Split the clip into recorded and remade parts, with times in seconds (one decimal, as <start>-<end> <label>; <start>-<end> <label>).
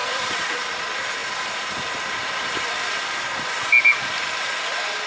0.0-5.1 recorded